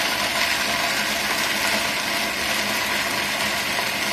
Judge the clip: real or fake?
real